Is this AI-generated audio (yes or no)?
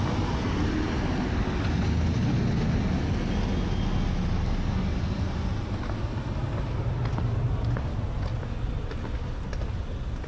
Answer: no